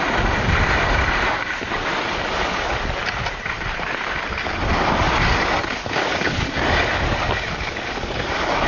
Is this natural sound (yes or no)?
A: yes